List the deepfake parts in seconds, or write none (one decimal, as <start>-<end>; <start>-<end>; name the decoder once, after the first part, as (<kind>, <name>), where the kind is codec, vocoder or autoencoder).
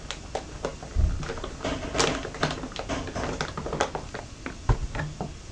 none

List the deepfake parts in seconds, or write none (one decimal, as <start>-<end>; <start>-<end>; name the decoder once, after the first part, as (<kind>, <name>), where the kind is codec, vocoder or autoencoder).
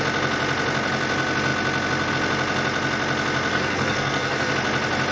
3.5-4.5 (codec, SNAC)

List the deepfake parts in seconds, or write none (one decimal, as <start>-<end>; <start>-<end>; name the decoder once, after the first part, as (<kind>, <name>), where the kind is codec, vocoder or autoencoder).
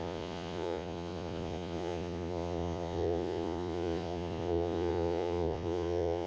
0.0-6.3 (vocoder, Vocos)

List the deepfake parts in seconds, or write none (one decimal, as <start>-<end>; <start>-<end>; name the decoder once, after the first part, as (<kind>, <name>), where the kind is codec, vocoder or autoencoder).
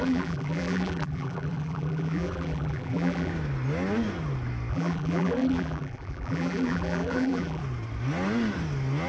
0.0-3.3 (vocoder, BigVGAN v2); 4.7-7.6